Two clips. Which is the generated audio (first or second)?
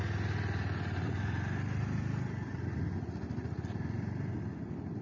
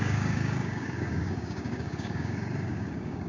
second